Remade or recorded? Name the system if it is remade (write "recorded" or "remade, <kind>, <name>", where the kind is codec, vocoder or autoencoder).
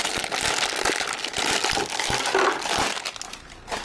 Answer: recorded